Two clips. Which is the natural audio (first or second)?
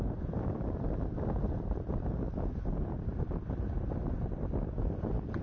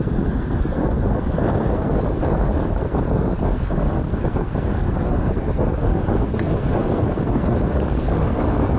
first